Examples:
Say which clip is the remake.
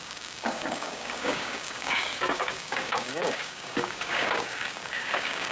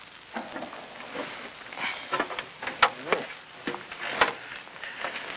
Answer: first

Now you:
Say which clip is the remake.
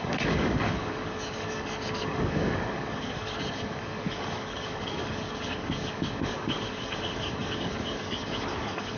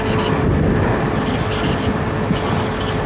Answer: first